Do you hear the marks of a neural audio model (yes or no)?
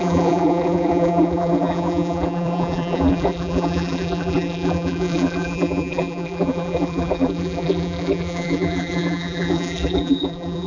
yes